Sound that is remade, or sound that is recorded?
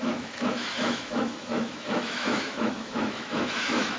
remade